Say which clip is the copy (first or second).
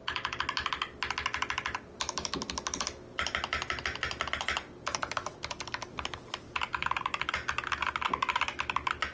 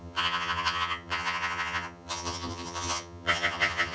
second